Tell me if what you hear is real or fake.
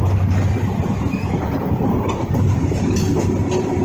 real